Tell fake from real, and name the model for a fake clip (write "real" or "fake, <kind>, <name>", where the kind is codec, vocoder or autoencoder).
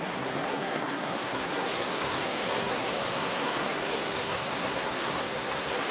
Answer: fake, codec, SNAC